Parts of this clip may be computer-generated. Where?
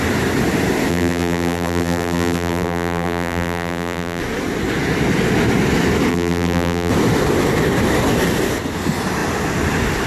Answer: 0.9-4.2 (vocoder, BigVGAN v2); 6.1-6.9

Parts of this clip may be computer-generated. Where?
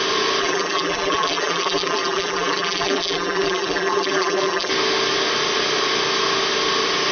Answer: 0.4-4.7 (vocoder, BigVGAN v2)